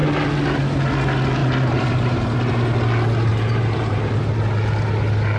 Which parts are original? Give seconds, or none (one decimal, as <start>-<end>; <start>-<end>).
0.0-1.4; 2.5-3.3; 4.1-5.4